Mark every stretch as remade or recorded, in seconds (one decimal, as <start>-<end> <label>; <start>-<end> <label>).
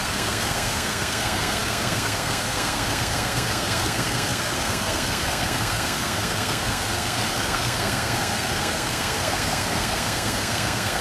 0.0-11.0 remade